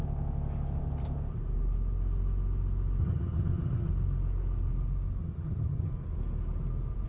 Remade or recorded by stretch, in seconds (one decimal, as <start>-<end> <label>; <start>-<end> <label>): 0.0-3.0 recorded; 3.0-3.9 remade; 3.9-5.2 recorded; 5.2-5.9 remade; 5.9-7.1 recorded